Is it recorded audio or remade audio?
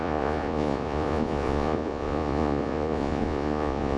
remade